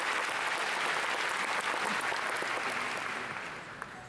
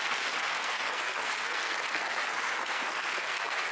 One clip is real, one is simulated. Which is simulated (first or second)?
second